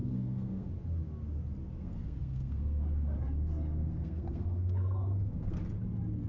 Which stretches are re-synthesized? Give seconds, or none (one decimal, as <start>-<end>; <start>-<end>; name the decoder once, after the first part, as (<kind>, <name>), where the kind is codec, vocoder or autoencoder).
0.0-0.7 (codec, SNAC); 1.8-5.6